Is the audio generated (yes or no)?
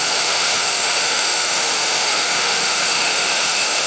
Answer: yes